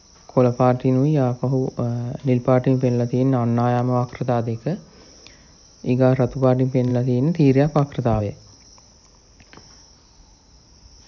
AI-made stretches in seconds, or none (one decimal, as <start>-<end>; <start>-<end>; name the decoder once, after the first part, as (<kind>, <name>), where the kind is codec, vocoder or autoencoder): none